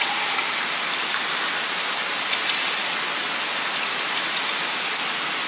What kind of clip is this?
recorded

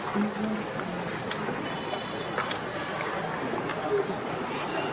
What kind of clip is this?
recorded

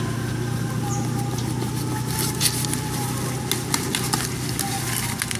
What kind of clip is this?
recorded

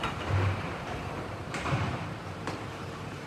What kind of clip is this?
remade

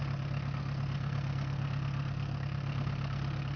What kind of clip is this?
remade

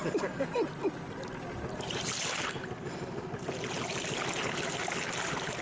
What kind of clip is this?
recorded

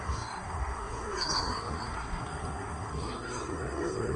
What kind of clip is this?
remade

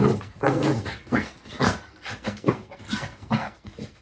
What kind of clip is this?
remade